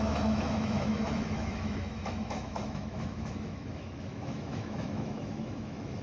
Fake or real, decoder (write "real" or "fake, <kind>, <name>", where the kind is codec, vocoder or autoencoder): fake, autoencoder, DAC-VAE